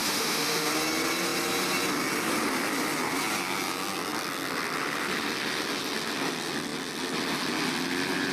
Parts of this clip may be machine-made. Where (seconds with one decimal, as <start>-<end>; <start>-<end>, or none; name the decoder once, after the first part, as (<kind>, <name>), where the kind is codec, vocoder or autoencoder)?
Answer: 0.0-0.7 (autoencoder, DAC-VAE)